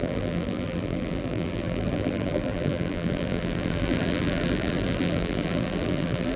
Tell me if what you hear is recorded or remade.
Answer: remade